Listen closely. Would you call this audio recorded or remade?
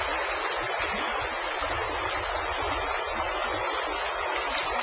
recorded